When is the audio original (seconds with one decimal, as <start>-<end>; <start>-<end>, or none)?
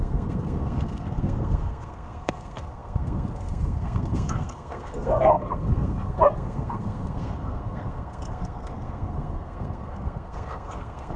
none